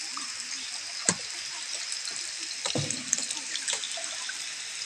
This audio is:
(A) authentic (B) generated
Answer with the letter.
A